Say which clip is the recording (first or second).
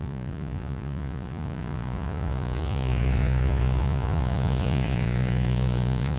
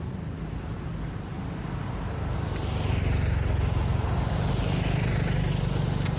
second